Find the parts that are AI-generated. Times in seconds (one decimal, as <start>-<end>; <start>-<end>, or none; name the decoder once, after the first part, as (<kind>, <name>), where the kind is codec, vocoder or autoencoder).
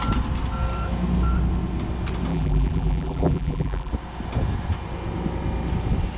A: 2.3-3.9 (vocoder, BigVGAN v2)